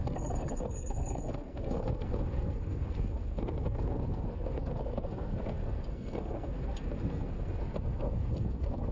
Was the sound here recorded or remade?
remade